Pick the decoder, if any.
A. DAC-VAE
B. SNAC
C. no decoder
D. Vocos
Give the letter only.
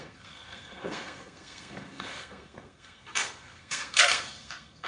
B